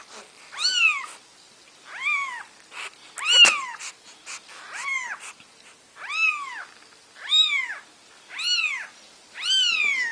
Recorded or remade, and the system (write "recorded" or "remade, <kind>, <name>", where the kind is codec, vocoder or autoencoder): recorded